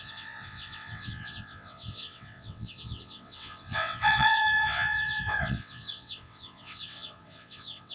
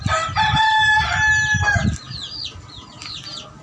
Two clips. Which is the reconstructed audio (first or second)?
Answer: first